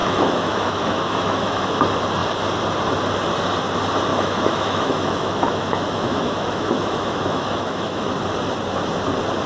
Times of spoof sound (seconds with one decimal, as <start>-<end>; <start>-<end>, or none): 0.0-1.7; 4.1-8.1